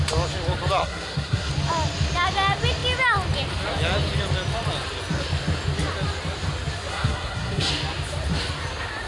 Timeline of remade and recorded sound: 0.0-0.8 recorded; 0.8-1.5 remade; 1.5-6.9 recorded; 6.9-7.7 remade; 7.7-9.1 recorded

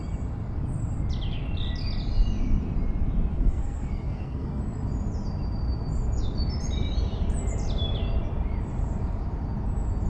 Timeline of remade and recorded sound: 0.0-3.3 recorded; 3.3-4.6 remade; 4.6-10.1 recorded